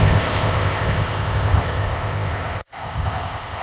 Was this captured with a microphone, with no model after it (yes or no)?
no